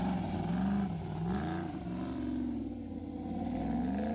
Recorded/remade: recorded